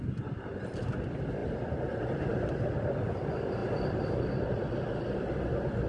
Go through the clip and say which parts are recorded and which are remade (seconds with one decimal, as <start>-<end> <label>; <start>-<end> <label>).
0.0-1.4 recorded; 1.4-3.2 remade; 3.2-3.6 recorded; 3.6-4.6 remade; 4.6-5.9 recorded